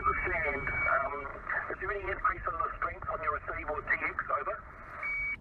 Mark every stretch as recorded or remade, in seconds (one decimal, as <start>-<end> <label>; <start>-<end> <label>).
0.0-1.3 recorded; 1.3-2.3 remade; 2.3-5.4 recorded